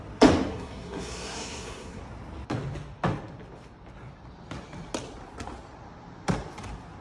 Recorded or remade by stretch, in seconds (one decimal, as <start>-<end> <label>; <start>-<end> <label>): 0.0-0.5 recorded; 0.5-2.0 remade; 2.0-7.0 recorded